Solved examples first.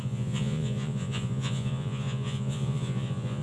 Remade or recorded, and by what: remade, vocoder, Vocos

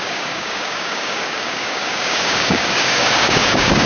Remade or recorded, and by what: remade, codec, DAC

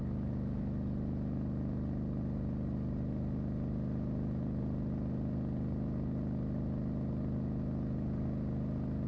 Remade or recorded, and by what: recorded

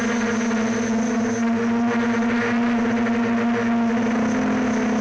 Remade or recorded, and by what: recorded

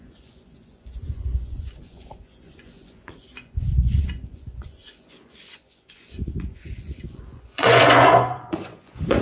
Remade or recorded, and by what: remade, vocoder, Vocos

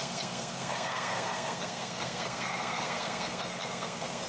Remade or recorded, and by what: remade, codec, SNAC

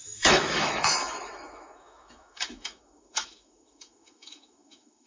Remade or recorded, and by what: remade, autoencoder, DAC-VAE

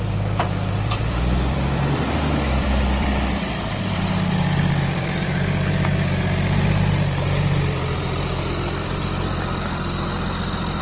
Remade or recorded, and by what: remade, vocoder, BigVGAN v2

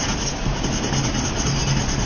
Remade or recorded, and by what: recorded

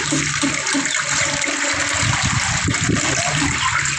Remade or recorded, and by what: recorded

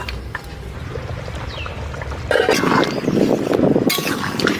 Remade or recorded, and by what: recorded